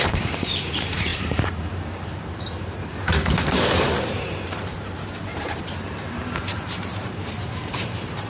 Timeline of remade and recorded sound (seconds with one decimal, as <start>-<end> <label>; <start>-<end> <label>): 0.0-8.3 remade